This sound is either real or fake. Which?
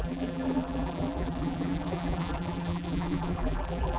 fake